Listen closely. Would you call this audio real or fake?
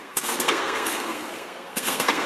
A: fake